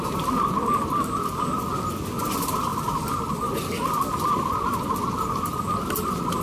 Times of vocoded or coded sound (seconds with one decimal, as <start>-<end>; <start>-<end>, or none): none